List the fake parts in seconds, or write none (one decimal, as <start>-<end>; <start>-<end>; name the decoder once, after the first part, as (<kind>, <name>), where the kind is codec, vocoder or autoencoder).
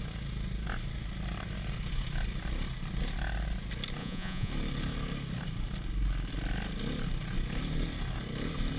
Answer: 4.0-4.5 (vocoder, Vocos)